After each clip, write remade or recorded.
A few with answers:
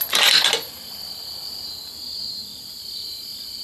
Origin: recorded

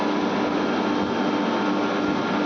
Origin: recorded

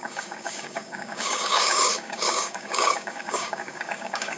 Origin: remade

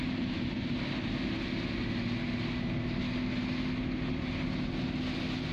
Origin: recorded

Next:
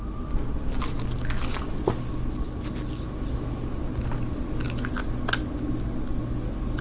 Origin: recorded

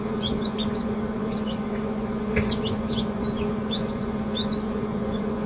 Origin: remade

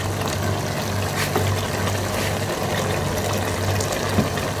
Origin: recorded